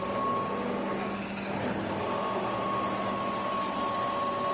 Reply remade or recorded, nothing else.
recorded